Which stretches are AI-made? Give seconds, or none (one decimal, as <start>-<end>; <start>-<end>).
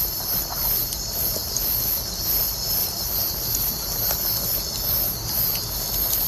2.8-3.7